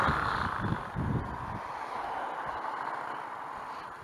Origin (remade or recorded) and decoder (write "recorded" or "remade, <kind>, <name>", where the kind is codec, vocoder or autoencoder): recorded